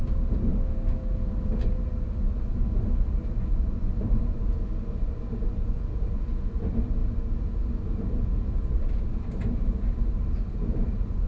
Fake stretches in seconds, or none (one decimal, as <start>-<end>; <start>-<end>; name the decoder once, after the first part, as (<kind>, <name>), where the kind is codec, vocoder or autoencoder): none